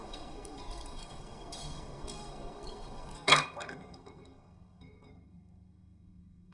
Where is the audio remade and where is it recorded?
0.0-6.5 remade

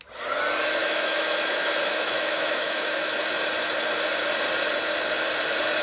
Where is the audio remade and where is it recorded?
0.0-0.8 recorded; 0.8-3.3 remade; 3.3-5.8 recorded

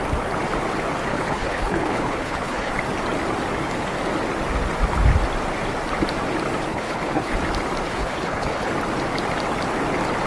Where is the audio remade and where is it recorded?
0.0-1.1 recorded; 1.1-2.7 remade; 2.7-6.7 recorded; 6.7-7.3 remade; 7.3-7.9 recorded; 7.9-8.7 remade; 8.7-10.3 recorded

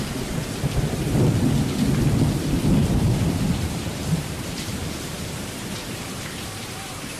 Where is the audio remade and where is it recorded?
0.0-2.8 recorded; 2.8-7.2 remade

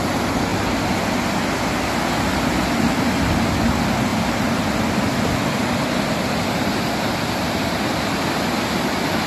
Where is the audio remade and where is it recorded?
0.0-9.3 recorded